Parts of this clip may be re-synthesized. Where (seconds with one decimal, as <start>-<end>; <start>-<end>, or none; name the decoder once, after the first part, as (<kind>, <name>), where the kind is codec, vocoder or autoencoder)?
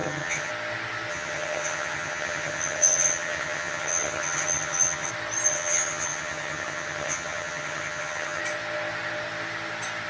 0.0-0.5 (vocoder, HiFi-GAN); 1.1-5.1; 5.5-8.4